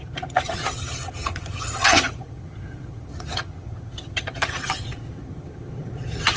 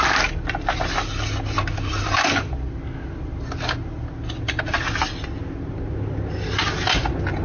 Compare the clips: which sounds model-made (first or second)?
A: first